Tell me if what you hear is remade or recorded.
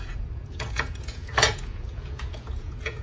remade